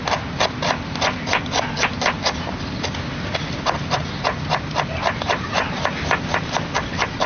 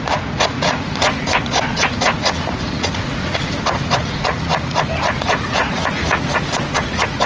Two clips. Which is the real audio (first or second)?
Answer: first